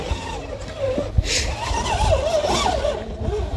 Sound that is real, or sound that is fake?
real